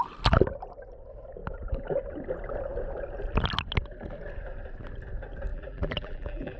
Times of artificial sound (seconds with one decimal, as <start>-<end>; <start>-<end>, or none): 5.5-6.6